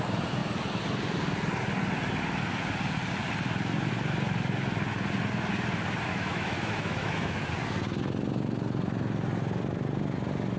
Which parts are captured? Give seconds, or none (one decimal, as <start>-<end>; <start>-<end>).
0.0-6.1; 7.5-10.6